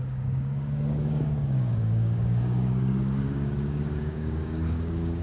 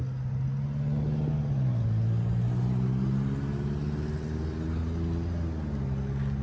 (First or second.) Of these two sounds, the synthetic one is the first